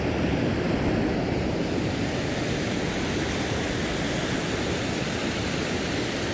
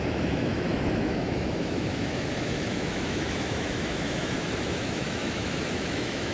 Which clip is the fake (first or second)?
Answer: second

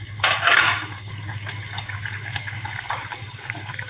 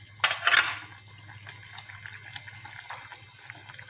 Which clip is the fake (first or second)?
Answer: first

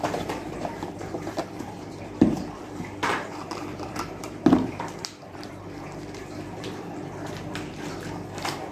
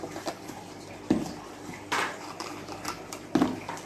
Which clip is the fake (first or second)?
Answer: first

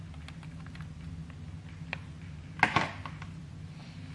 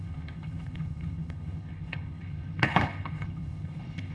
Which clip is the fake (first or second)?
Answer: second